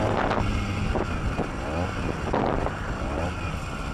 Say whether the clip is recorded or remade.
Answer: recorded